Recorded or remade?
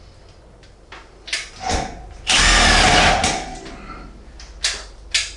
recorded